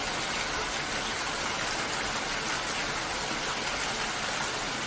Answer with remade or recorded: recorded